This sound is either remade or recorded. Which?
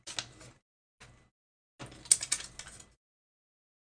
recorded